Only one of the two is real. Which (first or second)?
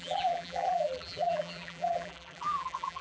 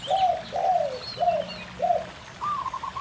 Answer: second